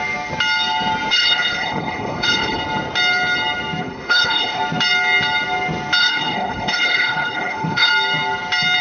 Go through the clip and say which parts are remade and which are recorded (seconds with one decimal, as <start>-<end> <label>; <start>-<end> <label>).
0.0-1.1 recorded; 1.1-2.6 remade; 2.6-3.8 recorded; 3.8-4.6 remade; 4.6-6.0 recorded; 6.0-7.9 remade; 7.9-8.8 recorded